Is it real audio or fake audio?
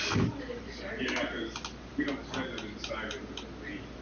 real